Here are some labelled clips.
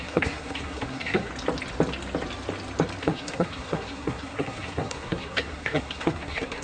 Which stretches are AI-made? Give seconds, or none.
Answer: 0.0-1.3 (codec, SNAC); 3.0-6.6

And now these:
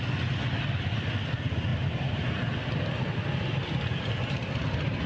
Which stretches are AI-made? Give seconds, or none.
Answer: none

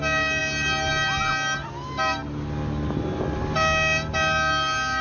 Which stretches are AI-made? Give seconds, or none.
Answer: none

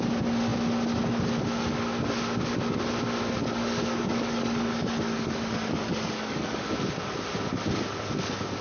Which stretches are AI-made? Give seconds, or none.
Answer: 3.4-6.7 (codec, DAC)

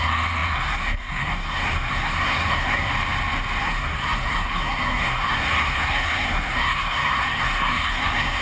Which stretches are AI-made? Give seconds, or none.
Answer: 0.0-2.9 (codec, SNAC); 3.6-8.4

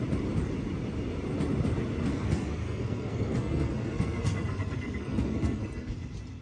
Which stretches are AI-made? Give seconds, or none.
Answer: 2.1-5.9 (codec, SNAC)

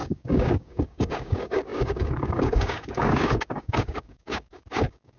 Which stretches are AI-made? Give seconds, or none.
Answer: 0.0-5.2 (codec, DAC)